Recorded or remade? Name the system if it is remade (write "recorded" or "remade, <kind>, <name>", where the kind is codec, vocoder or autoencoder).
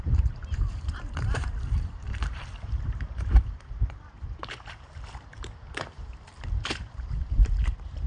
remade, vocoder, BigVGAN v2